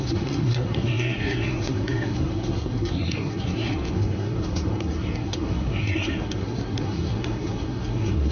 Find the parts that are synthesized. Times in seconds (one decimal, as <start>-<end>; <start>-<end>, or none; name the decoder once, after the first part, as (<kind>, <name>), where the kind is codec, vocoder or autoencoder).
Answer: 0.0-8.3 (codec, SNAC)